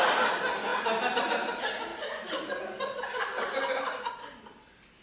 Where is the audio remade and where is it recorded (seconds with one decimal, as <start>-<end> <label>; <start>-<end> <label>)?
0.0-1.9 recorded; 1.9-4.1 remade; 4.1-5.0 recorded